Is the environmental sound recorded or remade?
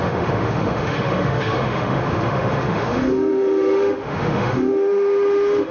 remade